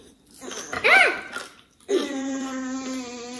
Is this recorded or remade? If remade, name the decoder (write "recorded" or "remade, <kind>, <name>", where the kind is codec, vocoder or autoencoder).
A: remade, vocoder, BigVGAN v2